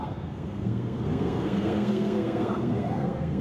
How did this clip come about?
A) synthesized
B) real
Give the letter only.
A